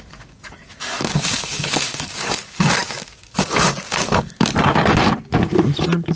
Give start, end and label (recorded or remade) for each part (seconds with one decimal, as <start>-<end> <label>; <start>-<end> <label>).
0.0-4.5 remade; 4.5-6.2 recorded

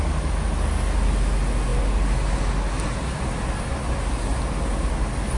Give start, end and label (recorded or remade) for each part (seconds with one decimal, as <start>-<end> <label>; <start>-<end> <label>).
0.0-5.4 recorded

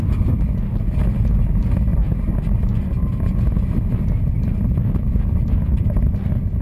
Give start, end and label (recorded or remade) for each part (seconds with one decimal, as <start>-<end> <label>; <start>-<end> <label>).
0.0-6.6 recorded

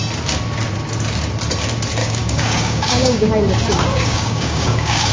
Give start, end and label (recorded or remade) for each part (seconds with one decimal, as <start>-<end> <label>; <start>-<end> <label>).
0.0-2.0 recorded; 2.0-3.3 remade; 3.3-3.9 recorded; 3.9-5.1 remade

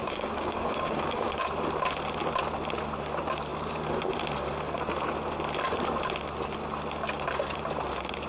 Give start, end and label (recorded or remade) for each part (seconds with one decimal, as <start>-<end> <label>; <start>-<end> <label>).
0.0-1.4 remade; 1.4-8.3 recorded

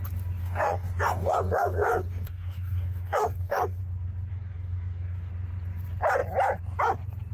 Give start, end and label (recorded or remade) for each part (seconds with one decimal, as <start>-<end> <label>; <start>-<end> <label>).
0.0-0.4 recorded; 0.4-3.8 remade; 3.8-4.3 recorded; 4.3-5.3 remade; 5.3-7.3 recorded

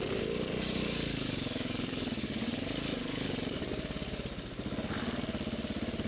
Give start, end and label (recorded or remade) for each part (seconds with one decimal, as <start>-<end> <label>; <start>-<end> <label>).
0.0-0.5 recorded; 0.5-3.6 remade; 3.6-6.1 recorded

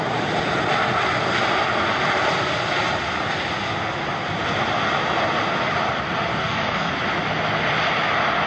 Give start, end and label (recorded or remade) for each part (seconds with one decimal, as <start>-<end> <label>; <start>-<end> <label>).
0.0-6.3 recorded; 6.3-6.9 remade; 6.9-8.5 recorded